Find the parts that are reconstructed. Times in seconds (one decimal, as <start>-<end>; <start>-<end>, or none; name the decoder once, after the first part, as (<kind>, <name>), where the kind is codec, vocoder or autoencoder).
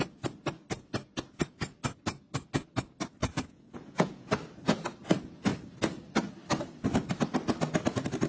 3.2-4.3 (vocoder, Vocos)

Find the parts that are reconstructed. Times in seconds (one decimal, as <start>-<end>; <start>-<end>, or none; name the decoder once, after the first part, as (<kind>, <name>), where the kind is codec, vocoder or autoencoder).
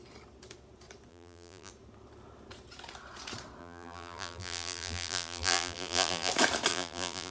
1.1-1.7 (vocoder, BigVGAN v2); 3.6-6.3; 6.7-7.3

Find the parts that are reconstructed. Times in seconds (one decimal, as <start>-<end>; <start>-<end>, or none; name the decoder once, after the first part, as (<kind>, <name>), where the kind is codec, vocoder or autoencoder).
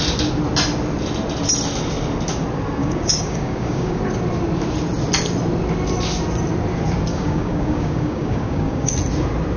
2.8-4.0 (codec, DAC); 7.1-8.9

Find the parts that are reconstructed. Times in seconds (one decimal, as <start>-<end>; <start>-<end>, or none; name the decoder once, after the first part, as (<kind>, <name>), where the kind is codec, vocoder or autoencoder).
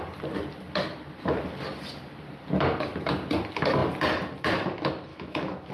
5.1-5.7 (autoencoder, DAC-VAE)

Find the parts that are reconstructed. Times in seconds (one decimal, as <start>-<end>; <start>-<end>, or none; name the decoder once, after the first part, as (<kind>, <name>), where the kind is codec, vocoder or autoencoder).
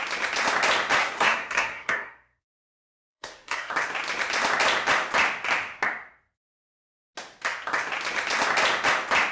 1.0-3.7 (codec, SNAC)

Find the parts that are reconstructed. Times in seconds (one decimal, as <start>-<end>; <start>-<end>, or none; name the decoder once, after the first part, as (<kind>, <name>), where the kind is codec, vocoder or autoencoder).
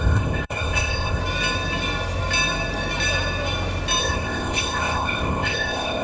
0.0-1.2 (codec, ZipCodec); 4.0-6.0